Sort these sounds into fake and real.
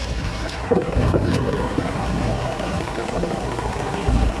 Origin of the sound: fake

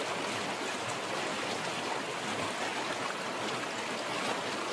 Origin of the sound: real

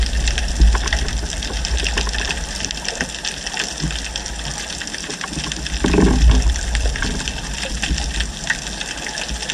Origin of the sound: real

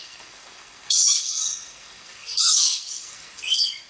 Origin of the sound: fake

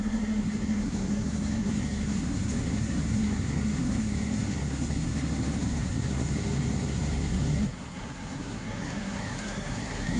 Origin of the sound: fake